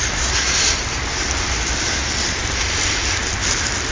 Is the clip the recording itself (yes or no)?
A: yes